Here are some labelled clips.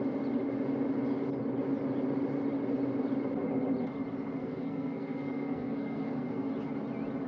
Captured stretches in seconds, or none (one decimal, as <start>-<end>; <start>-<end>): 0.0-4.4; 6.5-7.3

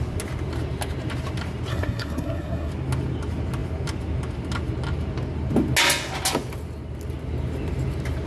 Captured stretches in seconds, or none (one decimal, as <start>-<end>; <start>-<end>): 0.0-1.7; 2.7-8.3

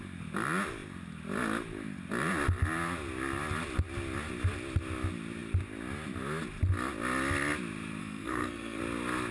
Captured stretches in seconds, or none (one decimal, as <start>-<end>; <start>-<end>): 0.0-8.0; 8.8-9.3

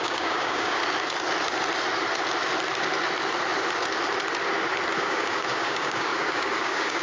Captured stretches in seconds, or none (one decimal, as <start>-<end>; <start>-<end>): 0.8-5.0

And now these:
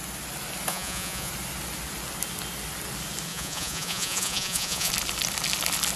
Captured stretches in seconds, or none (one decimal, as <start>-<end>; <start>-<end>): 0.0-0.7; 1.3-3.3; 4.9-6.0